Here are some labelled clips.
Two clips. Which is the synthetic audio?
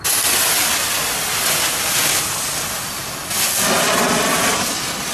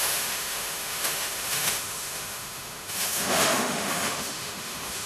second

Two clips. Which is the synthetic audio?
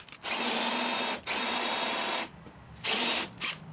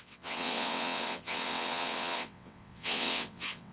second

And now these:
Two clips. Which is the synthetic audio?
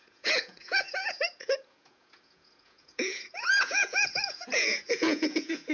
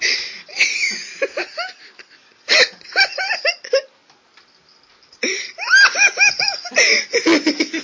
first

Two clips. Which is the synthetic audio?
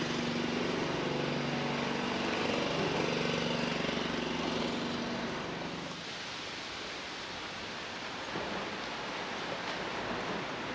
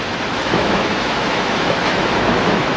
second